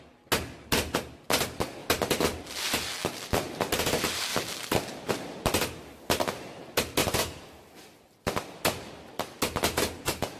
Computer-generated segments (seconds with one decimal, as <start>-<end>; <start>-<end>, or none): 4.3-5.1; 7.0-9.4

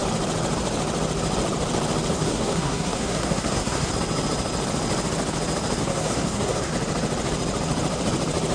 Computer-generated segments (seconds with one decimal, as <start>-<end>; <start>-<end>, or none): 2.1-3.9; 5.8-6.7

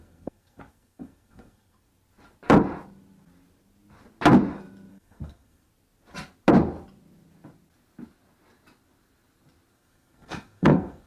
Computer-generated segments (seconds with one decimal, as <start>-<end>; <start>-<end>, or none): 0.0-1.9; 4.9-5.7; 9.7-11.1

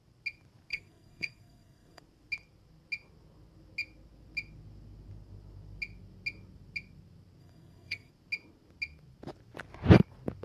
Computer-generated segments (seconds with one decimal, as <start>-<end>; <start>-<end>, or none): 0.7-2.0; 7.4-8.1

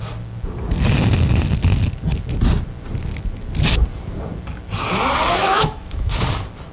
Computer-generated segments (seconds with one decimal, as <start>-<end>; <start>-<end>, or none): 5.4-6.2

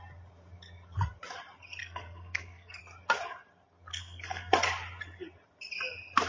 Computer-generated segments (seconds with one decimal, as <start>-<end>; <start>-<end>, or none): 1.8-2.8; 3.9-4.5